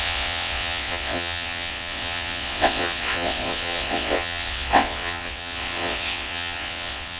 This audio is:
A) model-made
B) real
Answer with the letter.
A